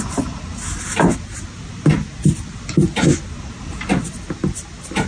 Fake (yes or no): no